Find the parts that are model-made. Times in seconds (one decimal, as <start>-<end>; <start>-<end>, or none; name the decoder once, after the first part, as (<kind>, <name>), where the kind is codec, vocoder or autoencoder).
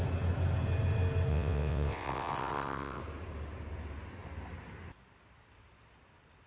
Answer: 1.3-3.0 (vocoder, WaveNeXt)